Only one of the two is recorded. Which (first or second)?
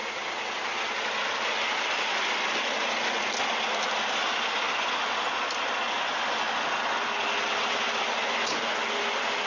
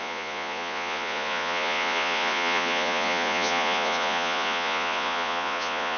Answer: first